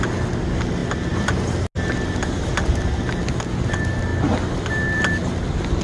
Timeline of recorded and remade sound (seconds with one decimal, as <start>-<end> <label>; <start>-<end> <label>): 0.0-5.8 recorded